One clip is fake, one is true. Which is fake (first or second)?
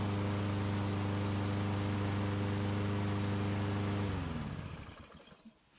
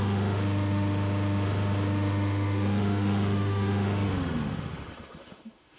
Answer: second